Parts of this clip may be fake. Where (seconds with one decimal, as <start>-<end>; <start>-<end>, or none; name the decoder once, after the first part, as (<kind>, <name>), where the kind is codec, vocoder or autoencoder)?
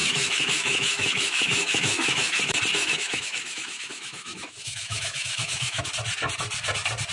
0.0-2.4 (autoencoder, DAC-VAE); 2.8-5.8